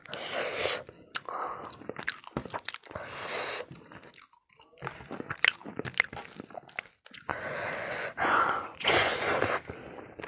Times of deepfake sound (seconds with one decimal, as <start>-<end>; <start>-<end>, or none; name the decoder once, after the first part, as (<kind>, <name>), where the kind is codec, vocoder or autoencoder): 7.3-9.4 (vocoder, Vocos)